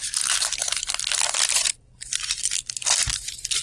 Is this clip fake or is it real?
fake